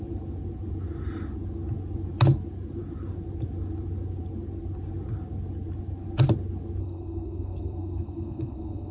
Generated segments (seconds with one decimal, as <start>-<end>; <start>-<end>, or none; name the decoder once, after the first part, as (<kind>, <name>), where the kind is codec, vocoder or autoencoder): 6.8-8.9 (codec, SNAC)